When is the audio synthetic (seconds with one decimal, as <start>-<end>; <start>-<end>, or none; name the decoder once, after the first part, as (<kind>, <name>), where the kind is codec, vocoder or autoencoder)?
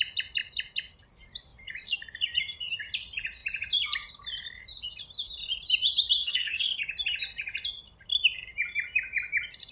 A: 6.2-6.8 (codec, SNAC)